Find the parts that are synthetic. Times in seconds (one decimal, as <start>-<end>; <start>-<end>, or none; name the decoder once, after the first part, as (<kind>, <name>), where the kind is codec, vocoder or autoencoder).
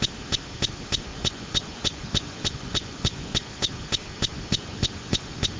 1.1-3.5 (vocoder, Vocos); 4.6-5.6